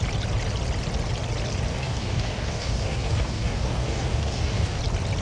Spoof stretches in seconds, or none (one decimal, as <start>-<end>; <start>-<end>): 1.7-4.8